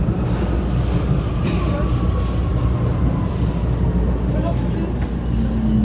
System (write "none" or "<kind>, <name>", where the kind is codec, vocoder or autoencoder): none